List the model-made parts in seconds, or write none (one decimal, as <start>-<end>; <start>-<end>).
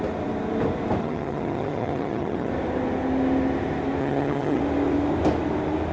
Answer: 1.0-2.5; 4.0-4.6